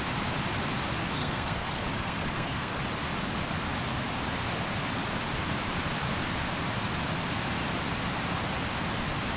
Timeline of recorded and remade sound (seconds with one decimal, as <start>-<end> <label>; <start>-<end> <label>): 0.0-1.2 recorded; 1.2-2.8 remade; 2.8-9.4 recorded